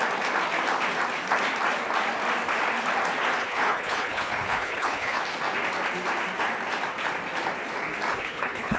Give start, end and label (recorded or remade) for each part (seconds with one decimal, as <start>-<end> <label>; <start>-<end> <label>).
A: 0.0-3.4 recorded; 3.4-5.2 remade; 5.2-8.1 recorded; 8.1-8.8 remade